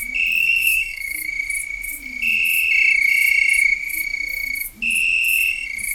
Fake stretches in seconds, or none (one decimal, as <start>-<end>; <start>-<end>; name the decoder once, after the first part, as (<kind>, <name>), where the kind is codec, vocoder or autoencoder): 0.4-1.3 (codec, SNAC)